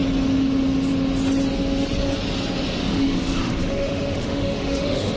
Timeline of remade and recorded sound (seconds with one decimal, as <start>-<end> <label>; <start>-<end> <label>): 0.0-2.8 recorded; 2.8-5.2 remade

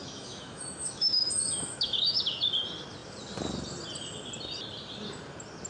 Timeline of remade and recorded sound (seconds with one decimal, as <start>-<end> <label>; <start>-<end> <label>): 0.0-2.4 remade; 2.4-5.7 recorded

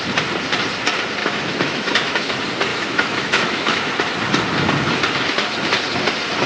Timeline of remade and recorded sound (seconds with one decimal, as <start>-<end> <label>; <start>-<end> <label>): 0.0-1.2 recorded; 1.2-2.3 remade; 2.3-2.7 recorded; 2.7-3.9 remade; 3.9-6.5 recorded